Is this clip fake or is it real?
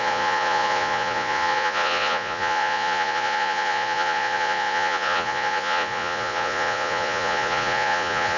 fake